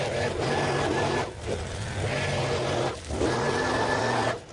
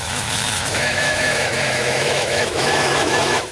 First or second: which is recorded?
first